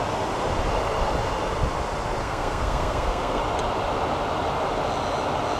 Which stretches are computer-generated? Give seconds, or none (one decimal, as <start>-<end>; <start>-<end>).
2.2-3.4